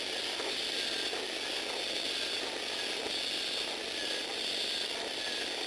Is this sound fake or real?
real